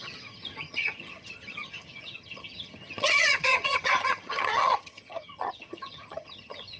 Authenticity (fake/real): fake